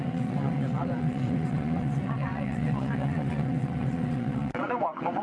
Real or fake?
fake